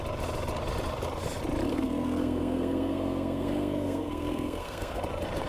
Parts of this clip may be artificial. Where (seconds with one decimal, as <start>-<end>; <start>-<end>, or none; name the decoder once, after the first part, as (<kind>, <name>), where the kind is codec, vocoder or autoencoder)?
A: 1.7-5.0 (codec, SNAC)